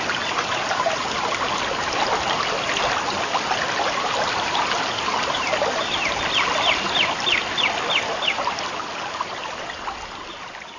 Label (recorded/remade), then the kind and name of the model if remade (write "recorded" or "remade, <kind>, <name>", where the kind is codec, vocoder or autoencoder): recorded